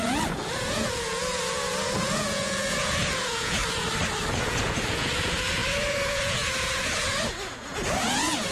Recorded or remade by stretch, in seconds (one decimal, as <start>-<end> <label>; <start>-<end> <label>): 0.0-3.6 remade; 3.6-4.4 recorded; 4.4-8.5 remade